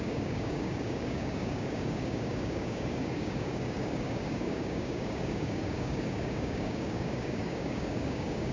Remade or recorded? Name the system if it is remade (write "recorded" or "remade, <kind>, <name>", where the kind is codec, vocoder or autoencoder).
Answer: remade, codec, DAC